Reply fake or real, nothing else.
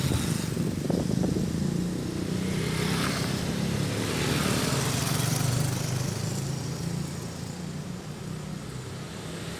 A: real